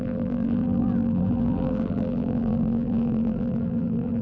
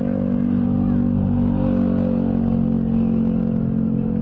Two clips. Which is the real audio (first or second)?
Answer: second